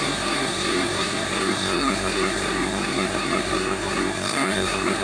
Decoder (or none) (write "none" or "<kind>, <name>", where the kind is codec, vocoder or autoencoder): codec, SNAC